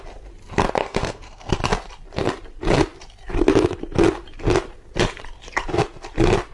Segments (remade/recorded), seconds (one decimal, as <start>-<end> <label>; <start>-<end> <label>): 0.0-0.8 recorded; 0.8-1.5 remade; 1.5-6.5 recorded